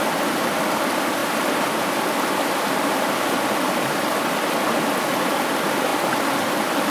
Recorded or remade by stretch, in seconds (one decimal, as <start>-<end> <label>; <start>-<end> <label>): 0.0-6.9 recorded